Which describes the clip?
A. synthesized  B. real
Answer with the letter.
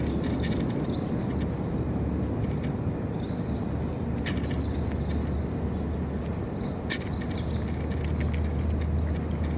B